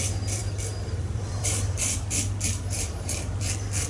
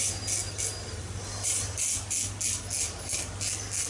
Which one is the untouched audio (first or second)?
second